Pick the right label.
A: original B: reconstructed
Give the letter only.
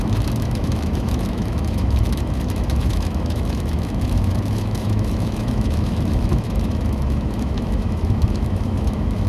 B